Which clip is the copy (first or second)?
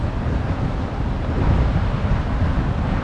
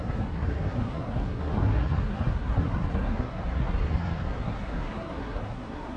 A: second